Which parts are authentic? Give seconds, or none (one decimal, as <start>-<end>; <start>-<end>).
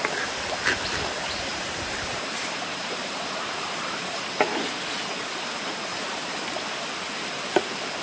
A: 0.0-1.5; 4.8-5.9; 6.5-8.0